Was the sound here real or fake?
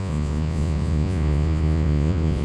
fake